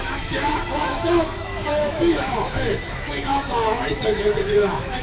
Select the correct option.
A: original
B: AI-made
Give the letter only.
B